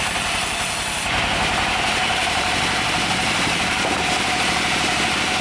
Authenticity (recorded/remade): remade